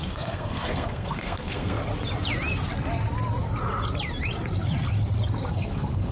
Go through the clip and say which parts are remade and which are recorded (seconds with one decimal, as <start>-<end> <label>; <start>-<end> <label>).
0.0-1.8 remade; 1.8-5.5 recorded; 5.5-6.1 remade